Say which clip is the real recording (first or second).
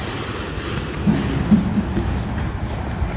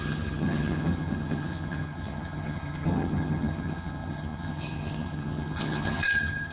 first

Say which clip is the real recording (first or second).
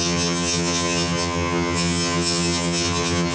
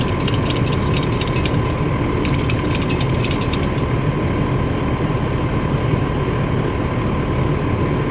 second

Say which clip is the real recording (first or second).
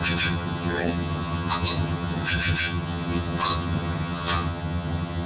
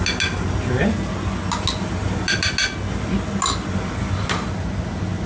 second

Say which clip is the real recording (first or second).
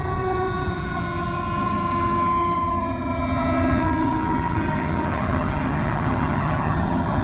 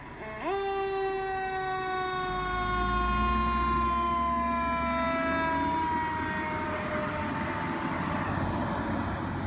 second